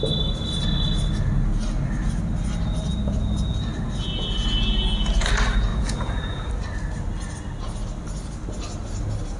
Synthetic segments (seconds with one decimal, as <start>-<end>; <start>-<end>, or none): 5.7-6.5